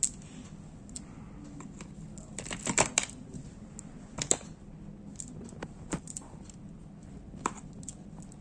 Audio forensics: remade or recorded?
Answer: recorded